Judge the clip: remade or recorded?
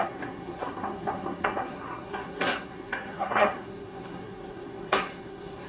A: remade